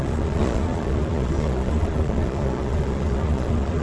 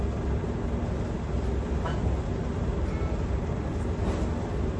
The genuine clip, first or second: second